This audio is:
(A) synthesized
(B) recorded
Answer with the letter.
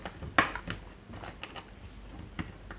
B